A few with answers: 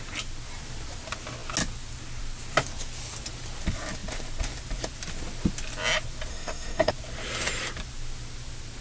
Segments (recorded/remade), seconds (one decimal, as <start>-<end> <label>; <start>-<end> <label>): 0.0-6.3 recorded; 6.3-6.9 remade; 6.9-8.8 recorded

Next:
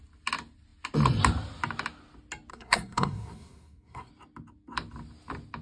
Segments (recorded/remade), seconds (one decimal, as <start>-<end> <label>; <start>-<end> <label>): 0.0-2.5 recorded; 2.5-4.1 remade; 4.1-5.6 recorded

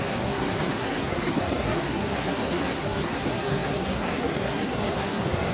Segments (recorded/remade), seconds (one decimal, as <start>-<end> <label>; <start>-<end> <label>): 0.0-5.5 remade

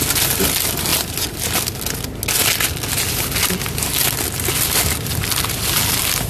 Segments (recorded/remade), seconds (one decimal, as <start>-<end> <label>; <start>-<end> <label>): 0.0-6.3 recorded